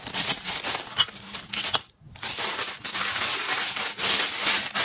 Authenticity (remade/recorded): recorded